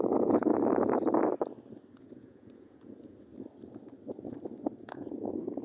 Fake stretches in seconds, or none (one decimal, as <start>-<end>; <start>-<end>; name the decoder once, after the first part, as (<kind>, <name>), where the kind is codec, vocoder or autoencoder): 0.0-0.5 (vocoder, Vocos); 2.0-3.3; 4.8-5.6